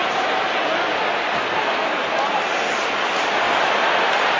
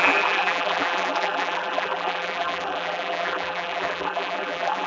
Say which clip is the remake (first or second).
second